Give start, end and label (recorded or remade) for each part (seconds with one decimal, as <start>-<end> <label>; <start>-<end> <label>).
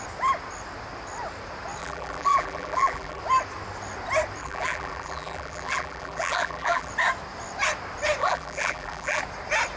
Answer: 0.0-1.8 recorded; 1.8-3.2 remade; 3.2-4.4 recorded; 4.4-6.9 remade; 6.9-8.2 recorded; 8.2-9.2 remade; 9.2-9.8 recorded